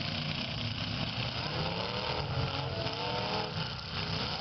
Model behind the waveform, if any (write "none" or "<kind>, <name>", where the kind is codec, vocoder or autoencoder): none